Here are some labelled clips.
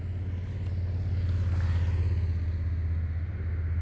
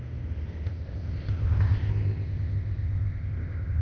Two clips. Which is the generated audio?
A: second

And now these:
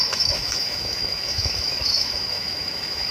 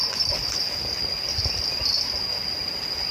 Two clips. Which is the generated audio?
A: first